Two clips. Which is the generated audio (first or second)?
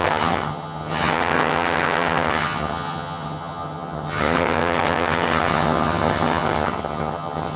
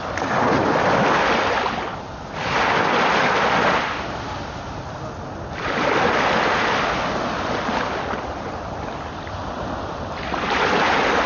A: first